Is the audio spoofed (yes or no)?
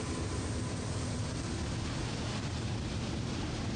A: no